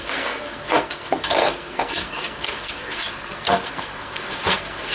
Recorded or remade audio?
remade